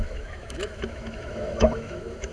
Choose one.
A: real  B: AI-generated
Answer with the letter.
B